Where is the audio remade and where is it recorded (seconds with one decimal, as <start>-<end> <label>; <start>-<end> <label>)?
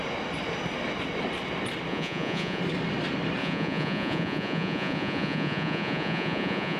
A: 0.0-1.9 recorded; 1.9-2.6 remade; 2.6-3.4 recorded; 3.4-6.8 remade